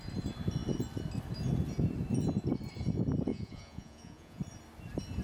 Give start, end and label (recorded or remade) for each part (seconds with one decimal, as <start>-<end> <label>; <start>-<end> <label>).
0.0-3.3 recorded; 3.3-4.4 remade; 4.4-5.2 recorded